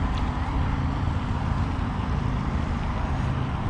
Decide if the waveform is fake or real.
real